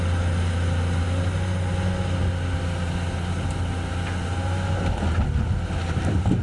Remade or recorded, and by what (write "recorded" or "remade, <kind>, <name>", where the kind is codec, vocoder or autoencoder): recorded